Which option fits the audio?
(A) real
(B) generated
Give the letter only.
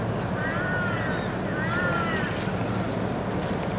A